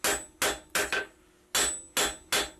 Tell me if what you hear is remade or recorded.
recorded